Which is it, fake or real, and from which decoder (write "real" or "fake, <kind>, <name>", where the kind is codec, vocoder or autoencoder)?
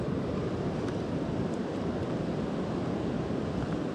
real